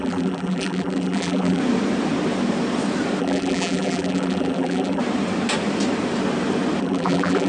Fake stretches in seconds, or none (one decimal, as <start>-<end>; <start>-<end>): 0.0-1.6; 3.2-5.0; 6.8-7.5